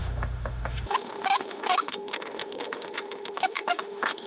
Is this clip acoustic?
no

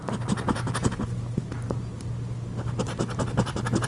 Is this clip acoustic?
yes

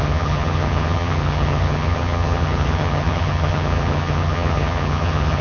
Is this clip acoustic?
no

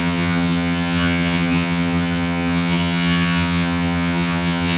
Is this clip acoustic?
no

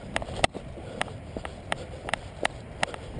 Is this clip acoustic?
no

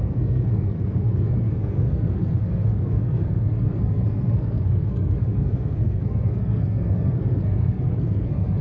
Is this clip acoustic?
no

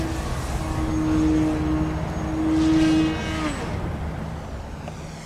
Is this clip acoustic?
yes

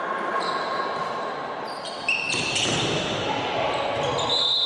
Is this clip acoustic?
yes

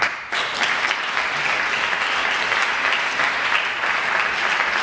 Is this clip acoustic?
yes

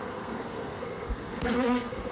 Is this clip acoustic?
no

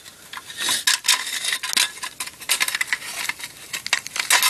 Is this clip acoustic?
yes